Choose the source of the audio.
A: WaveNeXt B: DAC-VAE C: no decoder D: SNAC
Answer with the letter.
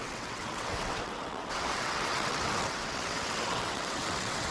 A